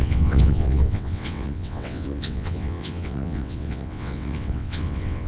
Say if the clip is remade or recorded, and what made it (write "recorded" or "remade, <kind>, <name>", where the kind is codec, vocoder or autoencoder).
remade, vocoder, WaveNeXt